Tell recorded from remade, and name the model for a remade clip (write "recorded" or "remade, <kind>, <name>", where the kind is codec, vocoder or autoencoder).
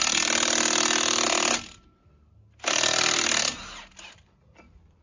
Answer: recorded